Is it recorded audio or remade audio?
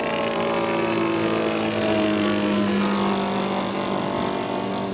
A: recorded